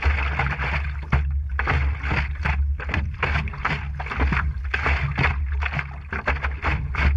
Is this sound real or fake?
real